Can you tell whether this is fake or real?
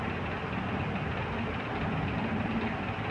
real